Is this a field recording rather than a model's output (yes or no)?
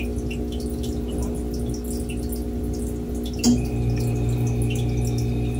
yes